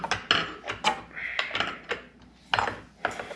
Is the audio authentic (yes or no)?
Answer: yes